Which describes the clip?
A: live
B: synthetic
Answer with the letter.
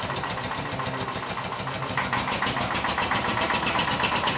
A